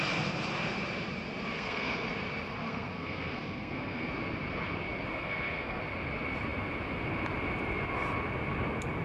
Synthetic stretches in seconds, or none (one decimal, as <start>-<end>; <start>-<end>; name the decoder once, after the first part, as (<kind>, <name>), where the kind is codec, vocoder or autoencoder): 1.5-2.1 (codec, SNAC); 2.6-4.1; 5.1-5.8